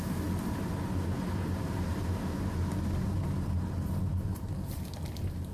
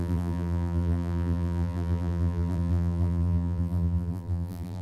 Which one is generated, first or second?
second